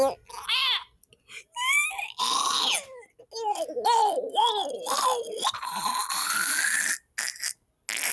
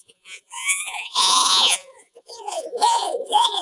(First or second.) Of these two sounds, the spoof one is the second